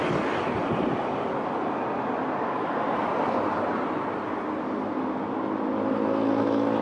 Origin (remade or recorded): recorded